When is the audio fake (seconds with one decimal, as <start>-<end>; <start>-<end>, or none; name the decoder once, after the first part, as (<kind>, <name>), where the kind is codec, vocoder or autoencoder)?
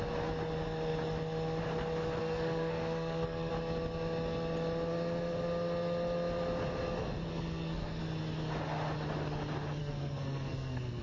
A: 2.2-3.5 (codec, SNAC); 7.3-8.0; 9.8-11.0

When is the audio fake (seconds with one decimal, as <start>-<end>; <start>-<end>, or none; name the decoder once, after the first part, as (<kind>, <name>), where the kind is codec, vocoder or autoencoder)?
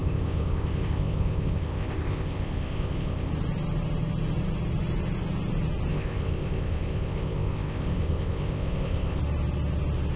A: 0.0-3.3 (codec, ZipCodec); 5.9-9.2